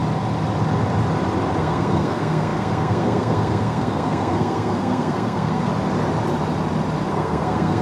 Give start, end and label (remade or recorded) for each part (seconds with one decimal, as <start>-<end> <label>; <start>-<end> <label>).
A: 0.0-1.6 recorded; 1.6-5.7 remade; 5.7-7.1 recorded; 7.1-7.8 remade